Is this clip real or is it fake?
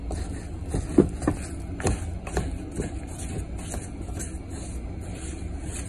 real